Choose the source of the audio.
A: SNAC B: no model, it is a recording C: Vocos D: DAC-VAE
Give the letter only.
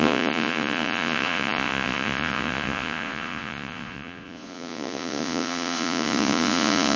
C